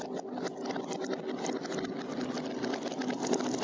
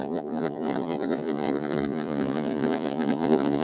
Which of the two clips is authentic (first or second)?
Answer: first